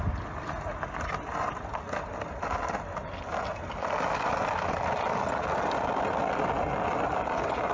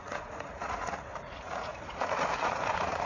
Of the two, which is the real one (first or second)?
first